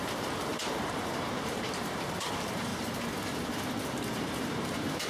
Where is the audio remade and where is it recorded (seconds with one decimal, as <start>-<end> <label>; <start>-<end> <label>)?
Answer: 0.0-2.7 remade; 2.7-4.0 recorded; 4.0-5.1 remade

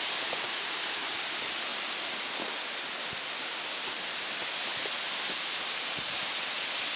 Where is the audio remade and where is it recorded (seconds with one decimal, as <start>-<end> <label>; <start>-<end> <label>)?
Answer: 0.0-7.0 recorded

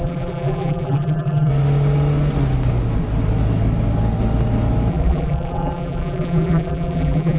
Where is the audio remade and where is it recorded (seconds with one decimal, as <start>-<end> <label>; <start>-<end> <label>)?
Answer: 0.0-1.5 remade; 1.5-4.9 recorded; 4.9-7.4 remade

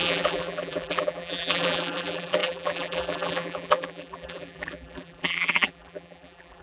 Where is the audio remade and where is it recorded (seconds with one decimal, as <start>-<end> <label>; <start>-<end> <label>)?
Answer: 0.0-6.6 remade

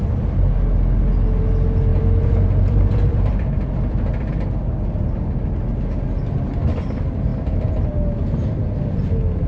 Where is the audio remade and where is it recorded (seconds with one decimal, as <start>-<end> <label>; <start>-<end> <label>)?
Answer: 0.0-1.9 recorded; 1.9-4.3 remade; 4.3-7.3 recorded; 7.3-7.9 remade; 7.9-9.5 recorded

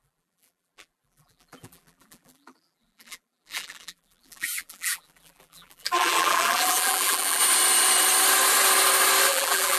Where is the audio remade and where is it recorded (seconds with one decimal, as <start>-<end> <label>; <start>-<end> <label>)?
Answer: 0.0-7.4 remade; 7.4-9.3 recorded; 9.3-9.8 remade

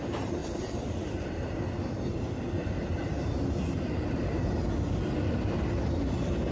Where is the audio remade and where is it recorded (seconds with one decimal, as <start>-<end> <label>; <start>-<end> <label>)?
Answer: 0.0-0.4 recorded; 0.4-4.3 remade; 4.3-6.5 recorded

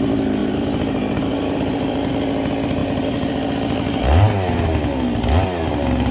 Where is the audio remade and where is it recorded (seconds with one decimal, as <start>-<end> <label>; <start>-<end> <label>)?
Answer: 0.0-0.4 recorded; 0.4-2.1 remade; 2.1-2.8 recorded; 2.8-4.0 remade; 4.0-6.1 recorded